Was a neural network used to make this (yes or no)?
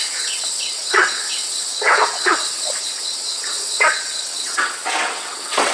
yes